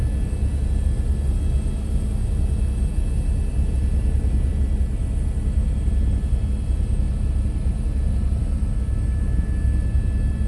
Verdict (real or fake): real